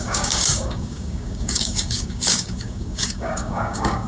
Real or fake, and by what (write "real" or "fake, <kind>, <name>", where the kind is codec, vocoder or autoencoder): fake, codec, DAC